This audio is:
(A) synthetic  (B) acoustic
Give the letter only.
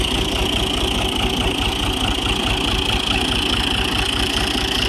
B